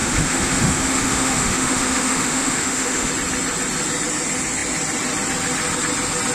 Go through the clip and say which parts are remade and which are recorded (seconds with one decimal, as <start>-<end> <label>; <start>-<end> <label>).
0.0-3.1 remade; 3.1-6.3 recorded